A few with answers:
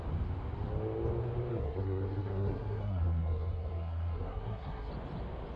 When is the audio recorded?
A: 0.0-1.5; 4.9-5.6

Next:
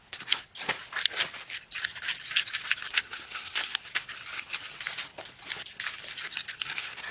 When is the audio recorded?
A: 0.4-2.9; 3.8-6.6

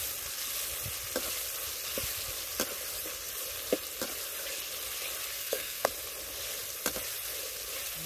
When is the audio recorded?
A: 0.0-5.4; 5.9-8.1